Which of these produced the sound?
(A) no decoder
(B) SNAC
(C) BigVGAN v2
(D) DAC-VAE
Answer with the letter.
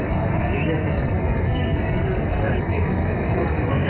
B